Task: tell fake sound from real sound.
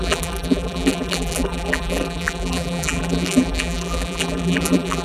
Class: fake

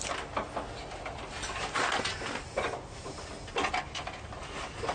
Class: real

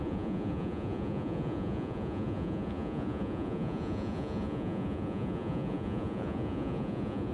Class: fake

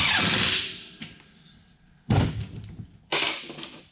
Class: real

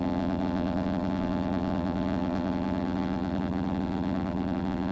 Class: fake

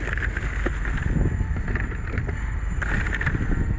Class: real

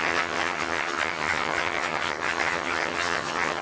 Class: fake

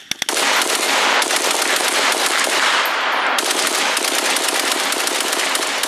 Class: real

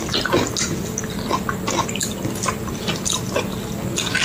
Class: real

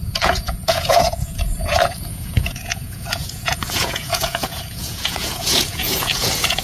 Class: fake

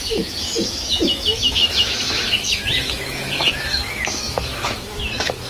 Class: fake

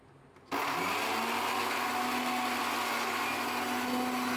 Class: real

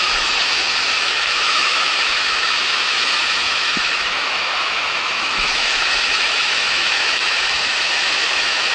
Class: fake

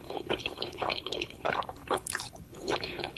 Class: fake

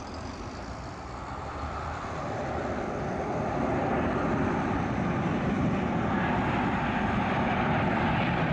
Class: fake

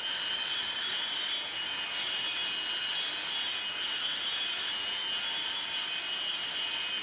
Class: real